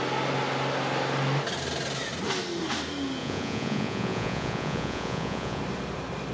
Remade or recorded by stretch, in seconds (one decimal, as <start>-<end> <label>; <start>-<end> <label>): 0.0-3.2 recorded; 3.2-5.6 remade; 5.6-6.3 recorded